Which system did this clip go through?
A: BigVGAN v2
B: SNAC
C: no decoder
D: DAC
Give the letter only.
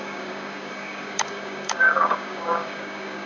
D